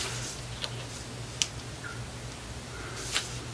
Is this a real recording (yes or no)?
yes